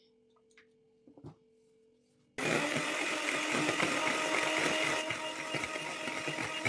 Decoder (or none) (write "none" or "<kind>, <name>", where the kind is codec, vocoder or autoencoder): none